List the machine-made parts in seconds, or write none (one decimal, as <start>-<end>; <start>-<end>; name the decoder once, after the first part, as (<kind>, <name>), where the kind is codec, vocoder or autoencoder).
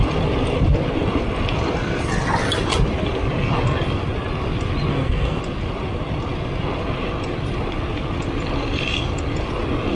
4.9-5.4 (codec, SNAC)